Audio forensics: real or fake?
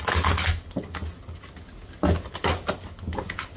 real